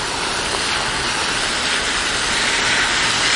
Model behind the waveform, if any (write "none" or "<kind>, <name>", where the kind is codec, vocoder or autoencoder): none